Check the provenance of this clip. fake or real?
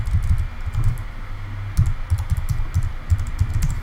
real